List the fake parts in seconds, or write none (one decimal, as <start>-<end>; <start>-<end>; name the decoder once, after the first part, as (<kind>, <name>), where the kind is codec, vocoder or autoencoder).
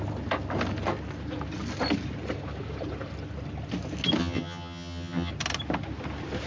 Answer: 4.2-5.3 (vocoder, HiFi-GAN)